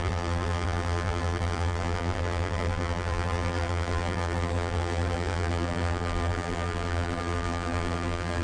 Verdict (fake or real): fake